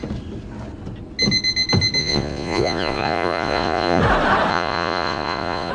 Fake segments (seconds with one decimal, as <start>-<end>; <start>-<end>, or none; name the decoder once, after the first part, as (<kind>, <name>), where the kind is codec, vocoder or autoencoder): 2.0-4.0 (vocoder, Vocos); 4.5-5.7